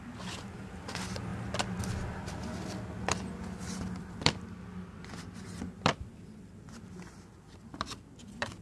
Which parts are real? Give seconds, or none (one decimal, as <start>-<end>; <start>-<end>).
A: 1.3-4.0

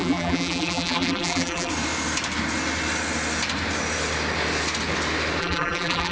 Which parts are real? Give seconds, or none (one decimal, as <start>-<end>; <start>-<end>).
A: 1.7-5.4

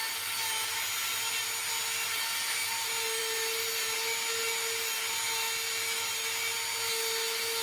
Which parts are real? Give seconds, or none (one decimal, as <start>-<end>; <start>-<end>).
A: 0.0-7.6

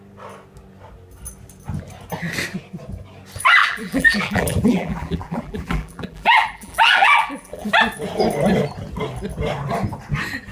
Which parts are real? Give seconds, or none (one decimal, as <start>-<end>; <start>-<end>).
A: 0.0-3.6; 7.7-10.5

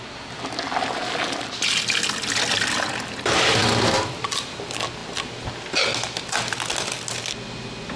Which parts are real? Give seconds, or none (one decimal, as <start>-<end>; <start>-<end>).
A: 0.0-3.6; 4.4-8.0

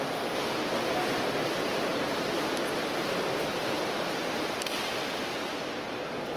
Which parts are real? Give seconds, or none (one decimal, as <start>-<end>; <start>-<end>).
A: 0.0-6.4

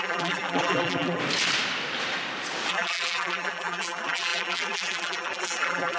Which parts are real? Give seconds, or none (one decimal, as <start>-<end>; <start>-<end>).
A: 1.2-2.7

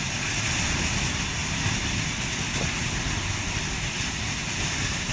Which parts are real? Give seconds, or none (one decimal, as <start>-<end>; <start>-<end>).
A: 0.0-5.1